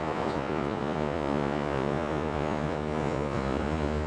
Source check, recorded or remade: remade